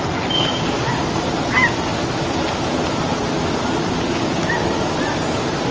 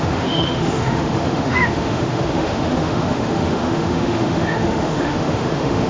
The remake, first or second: second